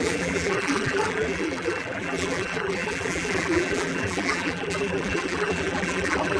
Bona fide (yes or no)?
no